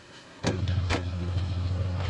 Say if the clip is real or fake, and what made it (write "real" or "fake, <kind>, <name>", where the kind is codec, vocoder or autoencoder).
fake, codec, SNAC